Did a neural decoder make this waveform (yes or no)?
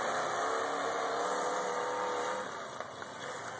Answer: no